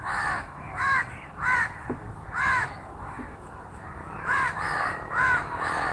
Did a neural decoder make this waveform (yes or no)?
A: yes